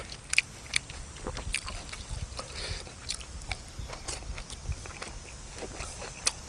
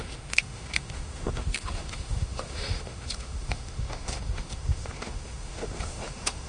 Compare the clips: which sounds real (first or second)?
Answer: first